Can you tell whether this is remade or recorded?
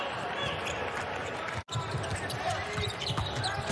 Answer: recorded